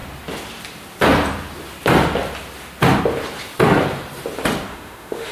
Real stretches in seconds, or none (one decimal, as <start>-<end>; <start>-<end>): 0.0-4.7